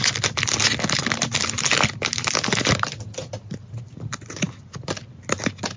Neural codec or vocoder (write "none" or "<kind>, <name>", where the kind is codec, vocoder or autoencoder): none